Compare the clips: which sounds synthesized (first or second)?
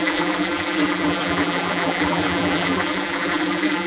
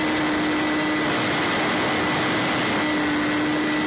first